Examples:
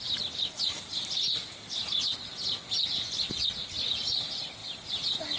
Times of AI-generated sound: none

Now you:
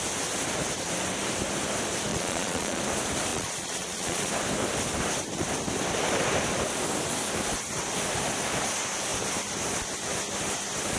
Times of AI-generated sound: 2.1-2.8 (vocoder, Vocos); 3.3-4.3

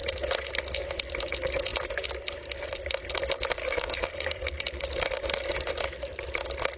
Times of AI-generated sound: 3.6-4.8 (codec, DAC)

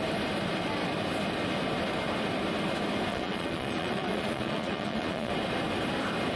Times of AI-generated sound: 3.1-5.3 (vocoder, Vocos)